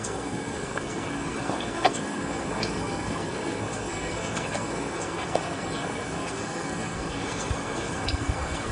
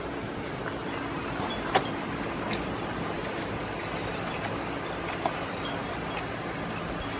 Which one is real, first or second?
second